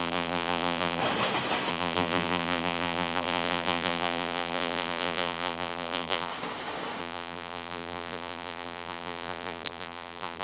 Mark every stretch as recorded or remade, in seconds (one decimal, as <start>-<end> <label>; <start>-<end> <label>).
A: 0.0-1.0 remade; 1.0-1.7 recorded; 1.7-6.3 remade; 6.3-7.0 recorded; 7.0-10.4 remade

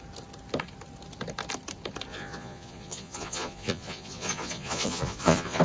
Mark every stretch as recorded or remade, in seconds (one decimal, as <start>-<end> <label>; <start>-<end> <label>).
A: 0.0-2.1 recorded; 2.1-5.6 remade

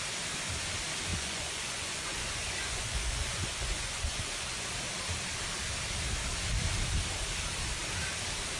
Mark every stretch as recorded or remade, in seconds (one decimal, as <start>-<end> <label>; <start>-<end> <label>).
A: 0.0-1.1 recorded; 1.1-4.7 remade; 4.7-8.6 recorded